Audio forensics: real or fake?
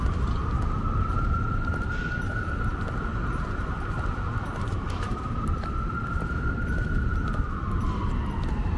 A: fake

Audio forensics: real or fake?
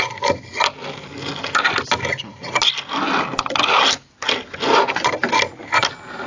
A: real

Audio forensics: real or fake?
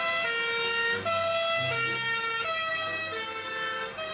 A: real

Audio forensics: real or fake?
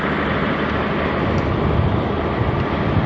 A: real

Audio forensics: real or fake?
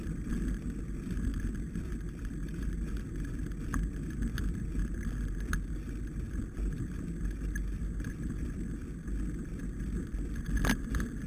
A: real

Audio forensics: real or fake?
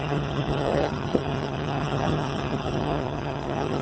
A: fake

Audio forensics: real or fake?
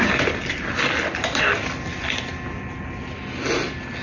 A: real